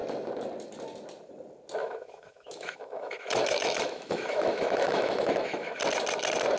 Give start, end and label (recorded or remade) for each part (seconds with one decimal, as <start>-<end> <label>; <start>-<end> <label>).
0.0-1.8 recorded; 1.8-5.8 remade; 5.8-6.6 recorded